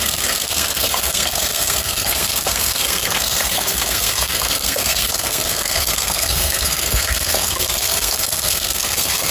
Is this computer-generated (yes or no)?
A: yes